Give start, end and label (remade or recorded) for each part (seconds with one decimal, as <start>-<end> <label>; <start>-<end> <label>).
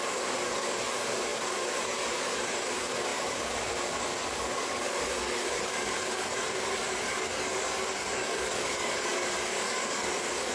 0.0-10.5 remade